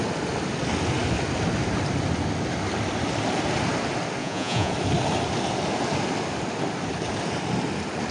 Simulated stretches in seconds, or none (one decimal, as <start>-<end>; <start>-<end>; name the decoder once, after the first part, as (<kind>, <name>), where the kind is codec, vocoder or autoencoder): 4.2-4.7 (vocoder, Vocos)